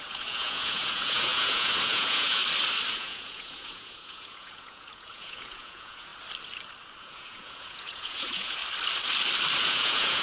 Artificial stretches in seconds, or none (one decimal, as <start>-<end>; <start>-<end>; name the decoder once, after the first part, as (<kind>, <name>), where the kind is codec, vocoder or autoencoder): 0.0-2.4 (vocoder, Vocos); 2.9-6.1; 7.0-8.6; 9.6-10.2